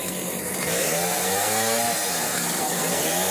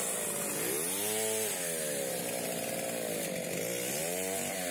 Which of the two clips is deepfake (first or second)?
first